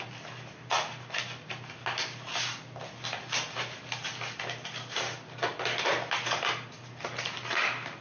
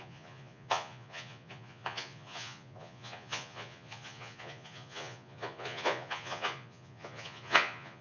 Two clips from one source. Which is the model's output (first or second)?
second